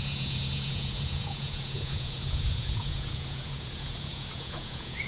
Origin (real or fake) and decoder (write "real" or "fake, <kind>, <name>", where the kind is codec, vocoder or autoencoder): fake, vocoder, Vocos